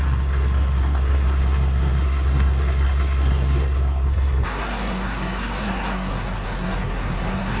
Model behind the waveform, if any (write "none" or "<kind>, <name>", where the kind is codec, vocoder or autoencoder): codec, SNAC